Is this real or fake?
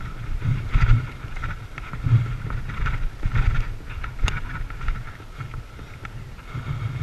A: real